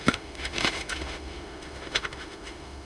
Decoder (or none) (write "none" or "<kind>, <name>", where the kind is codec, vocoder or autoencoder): autoencoder, DAC-VAE